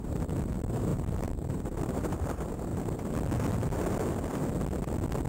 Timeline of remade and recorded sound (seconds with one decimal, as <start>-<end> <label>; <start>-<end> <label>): 0.0-2.7 remade; 2.7-5.3 recorded